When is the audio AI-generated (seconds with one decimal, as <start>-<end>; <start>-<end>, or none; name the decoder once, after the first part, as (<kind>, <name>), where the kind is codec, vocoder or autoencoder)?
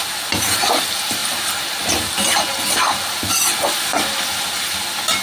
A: none